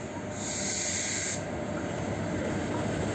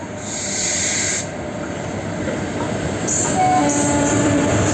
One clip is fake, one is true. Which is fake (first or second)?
second